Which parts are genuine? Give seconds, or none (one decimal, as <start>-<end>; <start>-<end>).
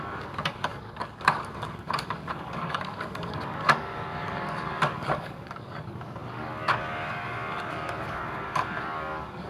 none